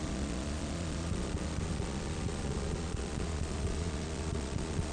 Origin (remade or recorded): remade